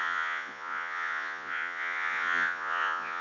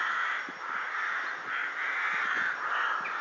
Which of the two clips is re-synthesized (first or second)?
first